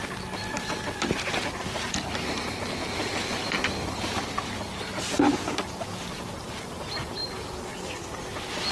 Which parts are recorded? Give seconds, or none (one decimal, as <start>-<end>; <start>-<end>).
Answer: 0.0-8.7